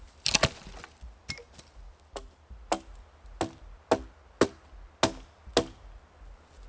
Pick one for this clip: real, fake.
real